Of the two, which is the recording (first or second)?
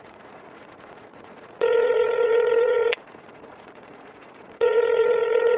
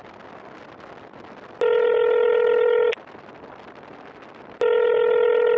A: second